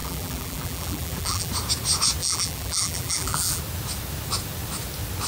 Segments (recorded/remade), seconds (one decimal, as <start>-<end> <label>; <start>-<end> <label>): 0.0-1.5 remade; 1.5-2.2 recorded; 2.2-3.6 remade; 3.6-5.3 recorded